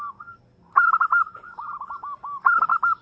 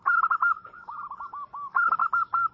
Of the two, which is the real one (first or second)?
first